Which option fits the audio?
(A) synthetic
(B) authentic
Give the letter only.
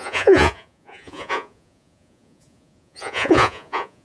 A